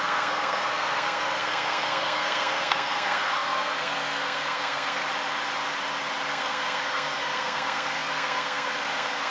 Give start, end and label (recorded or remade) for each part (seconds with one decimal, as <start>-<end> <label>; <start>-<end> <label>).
0.0-5.0 remade; 5.0-6.3 recorded; 6.3-9.3 remade